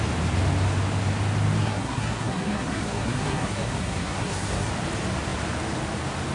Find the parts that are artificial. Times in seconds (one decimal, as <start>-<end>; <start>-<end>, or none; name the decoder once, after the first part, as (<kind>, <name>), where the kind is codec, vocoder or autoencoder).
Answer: 1.6-4.7 (codec, SNAC)